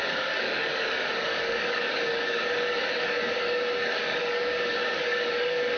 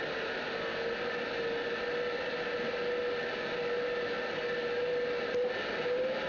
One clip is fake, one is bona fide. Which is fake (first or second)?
first